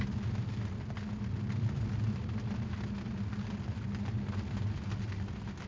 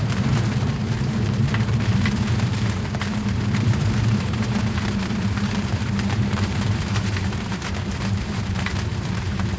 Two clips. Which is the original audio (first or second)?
first